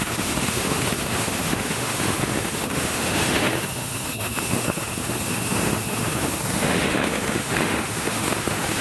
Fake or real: fake